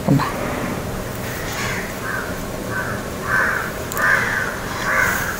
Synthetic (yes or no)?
yes